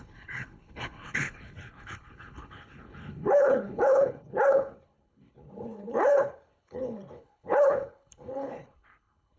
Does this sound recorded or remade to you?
remade